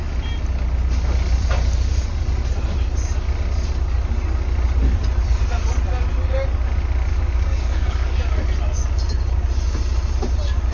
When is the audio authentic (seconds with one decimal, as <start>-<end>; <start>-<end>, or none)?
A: 0.0-7.1; 8.2-10.7